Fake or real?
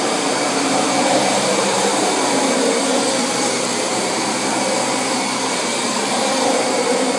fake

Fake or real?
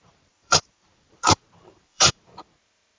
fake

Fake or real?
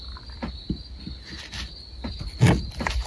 real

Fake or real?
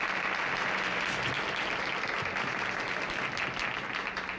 real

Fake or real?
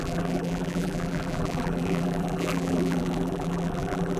fake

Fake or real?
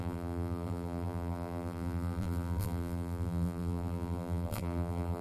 fake